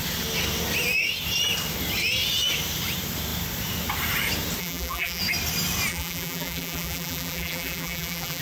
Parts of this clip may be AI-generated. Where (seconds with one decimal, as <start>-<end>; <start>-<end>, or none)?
4.6-5.2; 5.9-8.4